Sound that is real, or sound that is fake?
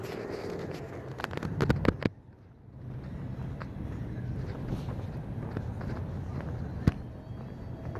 real